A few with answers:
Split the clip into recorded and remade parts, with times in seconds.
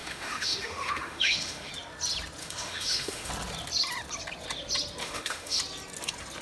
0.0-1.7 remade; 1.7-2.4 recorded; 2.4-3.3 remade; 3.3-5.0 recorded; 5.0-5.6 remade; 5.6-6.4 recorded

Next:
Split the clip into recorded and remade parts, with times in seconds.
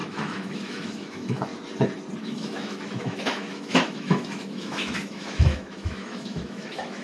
0.0-1.5 remade; 1.5-2.2 recorded; 2.2-7.0 remade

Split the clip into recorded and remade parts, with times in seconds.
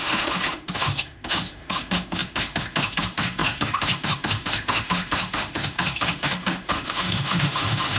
0.0-8.0 remade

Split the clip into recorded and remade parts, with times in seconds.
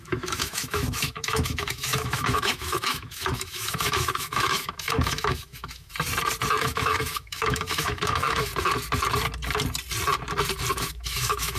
0.0-5.9 remade; 5.9-6.6 recorded; 6.6-8.5 remade; 8.5-10.7 recorded; 10.7-11.6 remade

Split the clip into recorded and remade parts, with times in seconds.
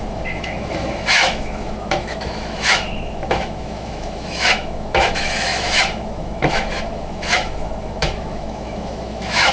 0.0-9.5 remade